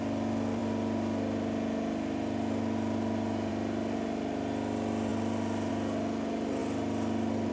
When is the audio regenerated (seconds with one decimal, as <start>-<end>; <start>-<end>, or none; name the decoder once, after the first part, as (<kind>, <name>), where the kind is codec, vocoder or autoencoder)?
none